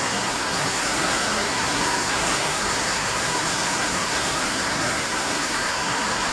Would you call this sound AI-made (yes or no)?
yes